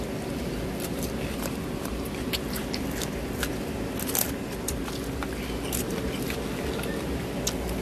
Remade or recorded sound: recorded